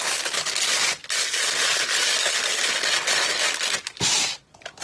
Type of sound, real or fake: real